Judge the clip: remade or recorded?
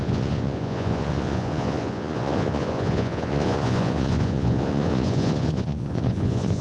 remade